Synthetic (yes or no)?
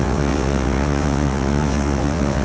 yes